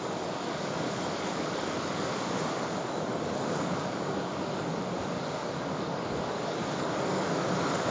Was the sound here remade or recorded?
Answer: remade